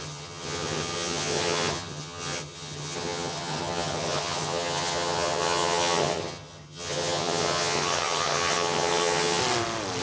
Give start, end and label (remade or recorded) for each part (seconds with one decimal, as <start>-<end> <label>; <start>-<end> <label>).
0.0-9.4 remade; 9.4-10.0 recorded